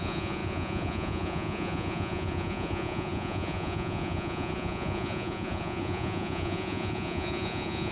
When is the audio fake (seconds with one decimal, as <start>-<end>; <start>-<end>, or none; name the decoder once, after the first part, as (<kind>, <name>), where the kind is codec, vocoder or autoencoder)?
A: 0.0-7.9 (vocoder, Vocos)